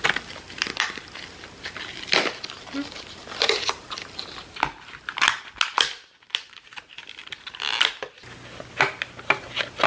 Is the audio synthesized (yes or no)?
no